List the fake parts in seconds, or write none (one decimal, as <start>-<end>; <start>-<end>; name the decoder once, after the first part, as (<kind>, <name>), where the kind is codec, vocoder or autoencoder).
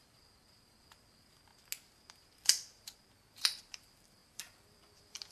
0.0-1.5 (vocoder, BigVGAN v2); 3.6-5.3